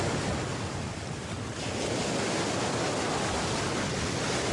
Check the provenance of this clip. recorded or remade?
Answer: recorded